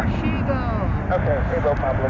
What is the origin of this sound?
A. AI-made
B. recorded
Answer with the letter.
B